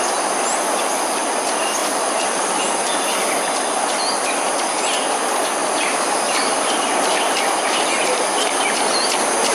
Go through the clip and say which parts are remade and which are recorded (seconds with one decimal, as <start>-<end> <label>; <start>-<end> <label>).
0.0-1.8 recorded; 1.8-2.6 remade; 2.6-5.6 recorded; 5.6-7.8 remade; 7.8-9.5 recorded